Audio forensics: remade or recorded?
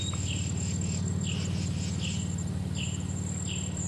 recorded